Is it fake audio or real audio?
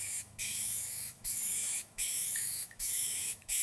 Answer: fake